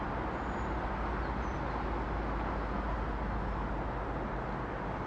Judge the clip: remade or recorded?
recorded